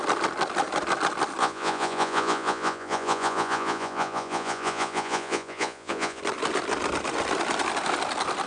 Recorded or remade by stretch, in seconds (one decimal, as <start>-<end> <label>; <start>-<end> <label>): 0.0-1.4 recorded; 1.4-6.2 remade; 6.2-8.5 recorded